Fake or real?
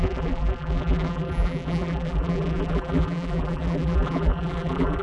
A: fake